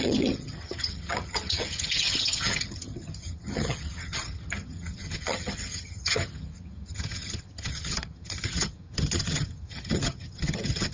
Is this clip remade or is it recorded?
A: remade